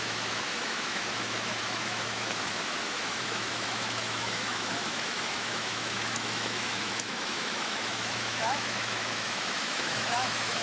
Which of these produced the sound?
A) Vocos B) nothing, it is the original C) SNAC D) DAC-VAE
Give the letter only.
D